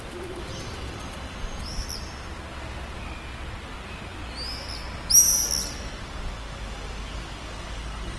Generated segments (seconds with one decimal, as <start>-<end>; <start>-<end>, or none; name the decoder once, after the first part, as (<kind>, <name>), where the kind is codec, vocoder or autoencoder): none